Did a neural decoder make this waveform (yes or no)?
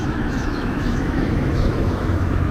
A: yes